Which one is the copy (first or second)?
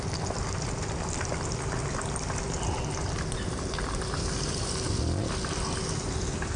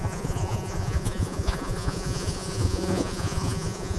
second